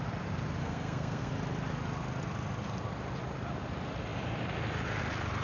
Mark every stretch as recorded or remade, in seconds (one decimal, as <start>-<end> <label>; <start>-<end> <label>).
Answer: 0.0-0.6 recorded; 0.6-1.3 remade; 1.3-5.4 recorded